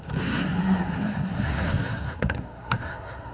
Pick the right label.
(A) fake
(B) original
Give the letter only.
A